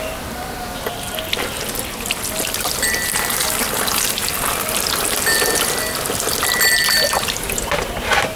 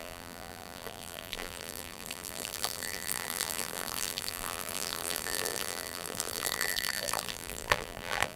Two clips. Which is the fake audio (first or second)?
second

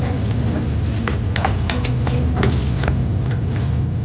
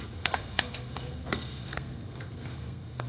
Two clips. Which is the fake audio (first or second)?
second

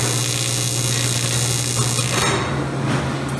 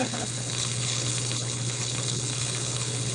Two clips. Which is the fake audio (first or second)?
second